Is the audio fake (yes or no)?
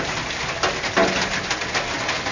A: no